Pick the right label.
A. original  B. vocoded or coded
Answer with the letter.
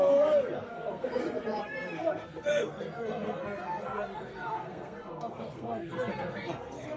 B